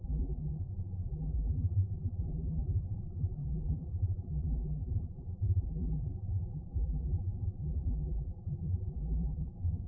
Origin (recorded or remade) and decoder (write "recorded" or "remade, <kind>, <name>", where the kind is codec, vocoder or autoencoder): remade, vocoder, BigVGAN v2